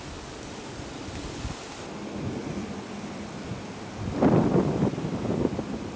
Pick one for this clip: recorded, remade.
recorded